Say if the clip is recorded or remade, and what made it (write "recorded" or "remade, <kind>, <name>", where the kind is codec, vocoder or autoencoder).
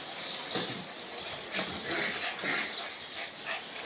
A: remade, vocoder, BigVGAN v2